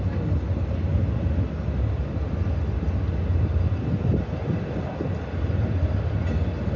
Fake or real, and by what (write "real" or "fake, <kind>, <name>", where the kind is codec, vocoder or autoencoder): real